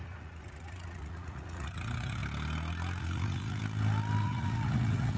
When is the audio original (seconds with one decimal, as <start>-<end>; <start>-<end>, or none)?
2.2-3.0; 3.6-4.2